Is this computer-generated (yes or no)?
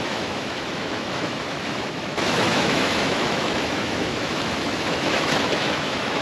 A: yes